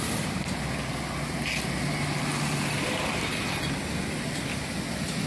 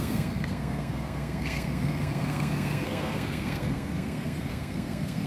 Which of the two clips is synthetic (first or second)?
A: second